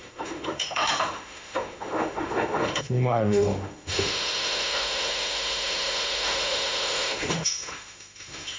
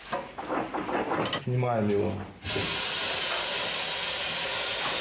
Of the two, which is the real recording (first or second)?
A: second